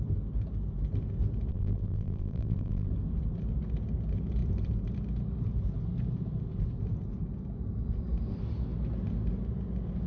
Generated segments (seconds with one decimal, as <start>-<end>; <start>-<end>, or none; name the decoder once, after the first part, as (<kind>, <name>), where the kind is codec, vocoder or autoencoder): 1.5-2.9 (vocoder, BigVGAN v2)